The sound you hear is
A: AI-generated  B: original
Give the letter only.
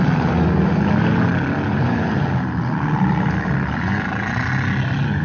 B